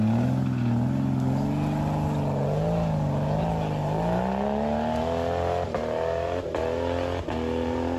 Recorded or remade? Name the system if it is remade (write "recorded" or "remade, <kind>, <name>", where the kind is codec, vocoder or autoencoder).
recorded